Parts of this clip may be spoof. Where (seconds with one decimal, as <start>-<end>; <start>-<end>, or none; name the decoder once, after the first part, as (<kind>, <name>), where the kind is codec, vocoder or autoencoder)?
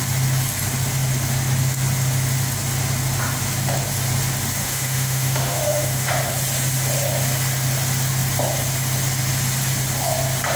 4.6-6.1 (autoencoder, DAC-VAE)